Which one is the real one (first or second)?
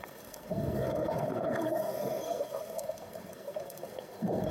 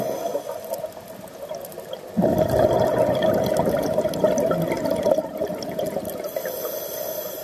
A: second